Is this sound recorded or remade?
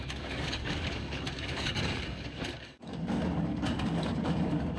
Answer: remade